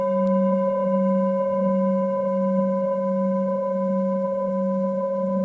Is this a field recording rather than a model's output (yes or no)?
yes